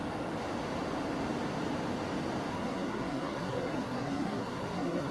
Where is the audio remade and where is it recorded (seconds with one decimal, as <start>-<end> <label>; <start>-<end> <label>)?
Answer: 0.0-2.5 recorded; 2.5-5.1 remade